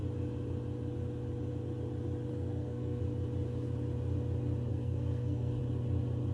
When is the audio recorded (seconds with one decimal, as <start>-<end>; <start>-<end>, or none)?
0.0-2.3; 3.0-4.7; 5.6-6.3